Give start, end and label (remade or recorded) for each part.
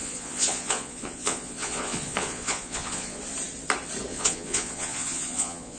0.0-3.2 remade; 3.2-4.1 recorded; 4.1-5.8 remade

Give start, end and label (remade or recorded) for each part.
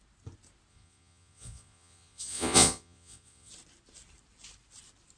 0.0-0.7 recorded; 0.7-3.5 remade; 3.5-5.2 recorded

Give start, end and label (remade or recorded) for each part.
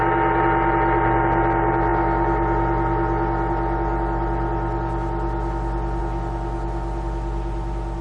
0.0-8.0 recorded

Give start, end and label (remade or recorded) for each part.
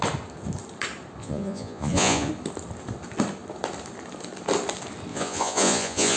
0.0-1.2 recorded; 1.2-2.3 remade; 2.3-5.1 recorded; 5.1-6.2 remade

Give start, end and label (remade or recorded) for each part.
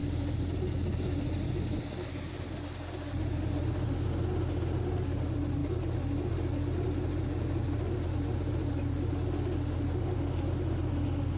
0.0-11.4 recorded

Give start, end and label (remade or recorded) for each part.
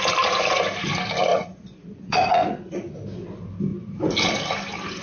0.0-1.3 recorded; 1.3-2.9 remade; 2.9-5.0 recorded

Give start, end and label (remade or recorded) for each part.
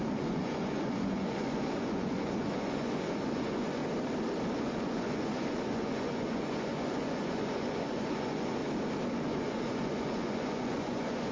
0.0-3.8 remade; 3.8-4.6 recorded; 4.6-8.6 remade; 8.6-9.2 recorded; 9.2-11.3 remade